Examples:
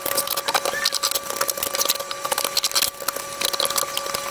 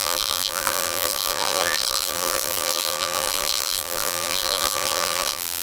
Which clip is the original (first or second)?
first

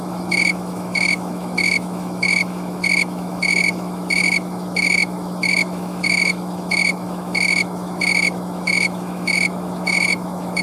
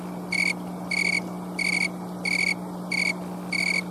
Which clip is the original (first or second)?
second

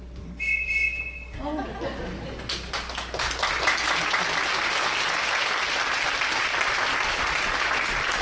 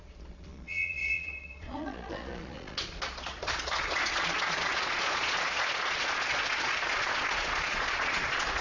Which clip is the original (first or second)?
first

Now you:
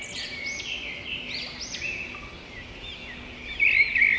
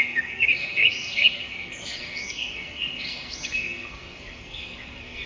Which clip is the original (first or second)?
first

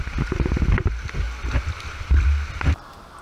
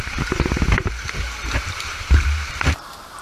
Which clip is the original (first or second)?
first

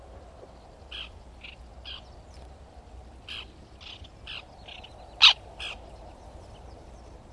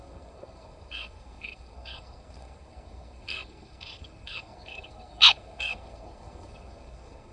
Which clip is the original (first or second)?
first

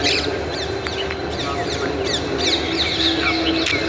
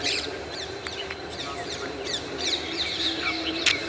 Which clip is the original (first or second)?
first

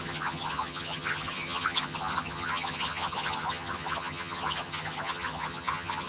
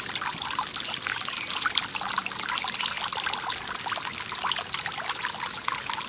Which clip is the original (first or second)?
second